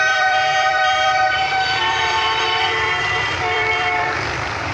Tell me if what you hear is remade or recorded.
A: remade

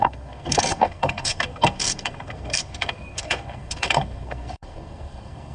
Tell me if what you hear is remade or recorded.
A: remade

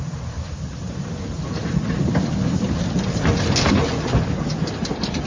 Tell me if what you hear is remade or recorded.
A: recorded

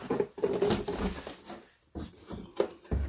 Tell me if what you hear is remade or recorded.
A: recorded